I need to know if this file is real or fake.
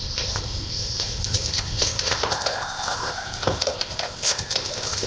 fake